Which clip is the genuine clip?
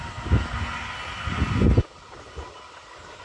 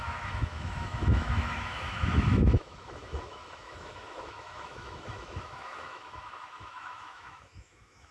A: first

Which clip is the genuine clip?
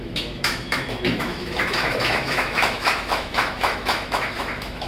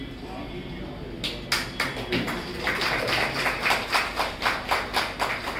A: second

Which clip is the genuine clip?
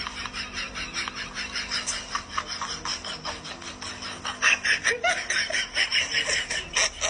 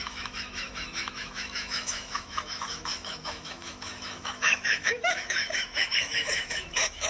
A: first